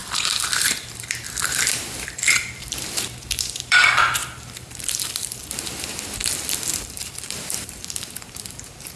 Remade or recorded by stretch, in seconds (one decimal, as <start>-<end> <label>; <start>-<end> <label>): 0.0-6.2 remade; 6.2-6.7 recorded; 6.7-9.0 remade